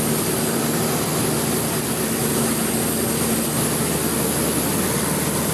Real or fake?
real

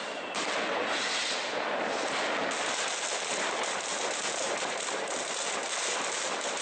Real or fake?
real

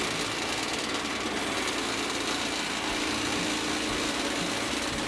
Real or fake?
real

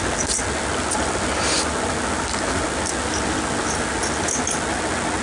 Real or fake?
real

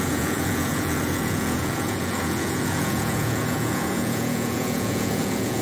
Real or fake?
fake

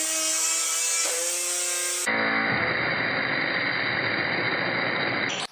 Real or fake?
real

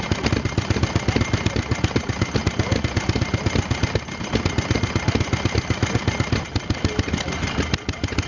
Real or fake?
real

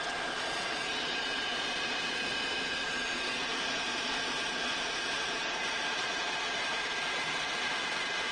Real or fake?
fake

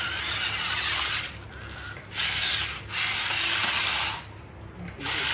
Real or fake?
real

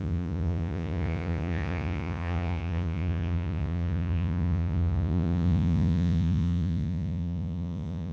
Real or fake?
fake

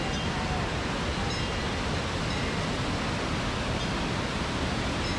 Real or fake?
real